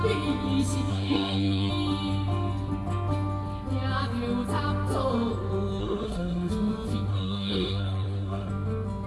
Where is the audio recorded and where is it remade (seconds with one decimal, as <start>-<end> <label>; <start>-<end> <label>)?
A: 0.0-0.9 recorded; 0.9-1.7 remade; 1.7-5.8 recorded; 5.8-6.5 remade; 6.5-7.1 recorded; 7.1-8.5 remade; 8.5-9.1 recorded